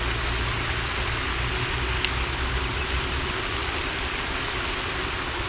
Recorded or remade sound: recorded